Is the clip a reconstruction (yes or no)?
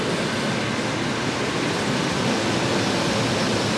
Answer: no